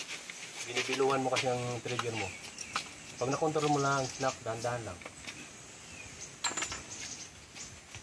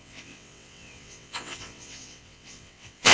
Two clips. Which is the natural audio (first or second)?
first